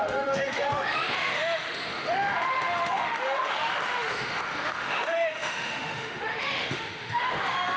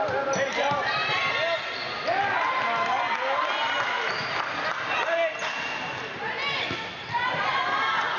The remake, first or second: first